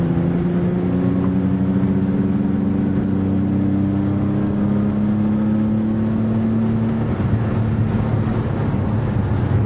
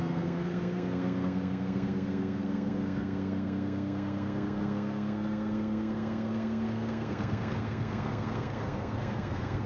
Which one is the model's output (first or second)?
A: second